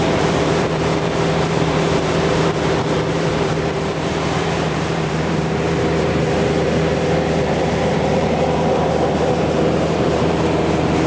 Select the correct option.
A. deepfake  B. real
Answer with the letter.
A